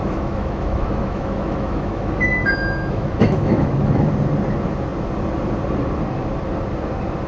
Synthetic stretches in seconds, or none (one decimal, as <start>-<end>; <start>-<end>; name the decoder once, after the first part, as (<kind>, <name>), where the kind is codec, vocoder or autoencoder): 0.0-4.1 (autoencoder, DAC-VAE)